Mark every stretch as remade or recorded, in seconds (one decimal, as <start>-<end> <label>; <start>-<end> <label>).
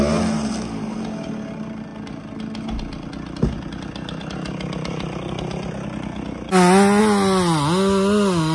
0.0-8.5 recorded